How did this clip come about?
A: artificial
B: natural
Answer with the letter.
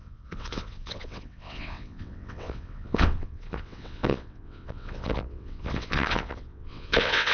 A